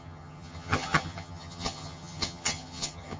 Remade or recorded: remade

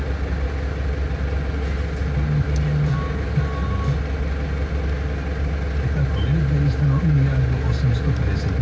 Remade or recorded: recorded